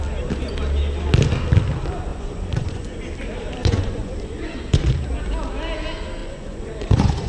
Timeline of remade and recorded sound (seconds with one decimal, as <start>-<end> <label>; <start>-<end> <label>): 0.0-2.1 recorded; 2.1-3.0 remade; 3.0-3.6 recorded; 3.6-5.0 remade; 5.0-6.2 recorded; 6.2-7.3 remade